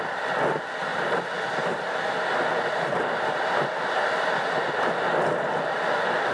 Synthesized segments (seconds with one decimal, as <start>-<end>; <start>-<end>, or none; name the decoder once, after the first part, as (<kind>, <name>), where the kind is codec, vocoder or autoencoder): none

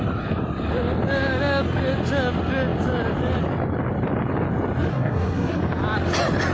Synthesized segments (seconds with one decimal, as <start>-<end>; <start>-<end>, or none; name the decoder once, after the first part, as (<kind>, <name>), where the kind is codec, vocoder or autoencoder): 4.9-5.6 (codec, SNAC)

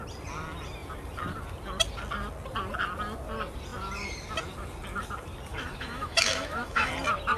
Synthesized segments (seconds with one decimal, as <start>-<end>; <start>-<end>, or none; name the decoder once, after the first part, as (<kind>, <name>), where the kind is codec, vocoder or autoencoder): 5.5-6.9 (autoencoder, DAC-VAE)

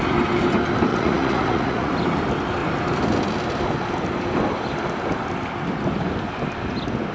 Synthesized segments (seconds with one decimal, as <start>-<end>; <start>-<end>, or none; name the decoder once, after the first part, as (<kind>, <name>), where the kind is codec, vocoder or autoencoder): 0.9-1.9 (vocoder, Vocos)

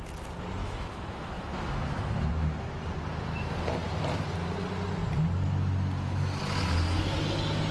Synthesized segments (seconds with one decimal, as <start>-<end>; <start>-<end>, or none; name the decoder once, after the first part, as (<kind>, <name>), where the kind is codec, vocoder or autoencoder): 0.6-2.3 (autoencoder, DAC-VAE)